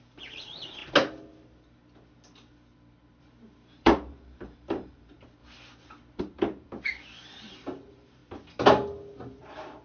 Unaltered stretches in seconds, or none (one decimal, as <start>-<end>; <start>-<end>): 0.8-3.2; 5.4-6.2; 8.2-9.4